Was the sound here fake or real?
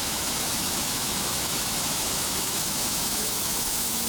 fake